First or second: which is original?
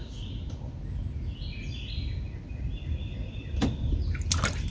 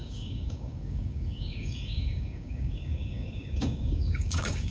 first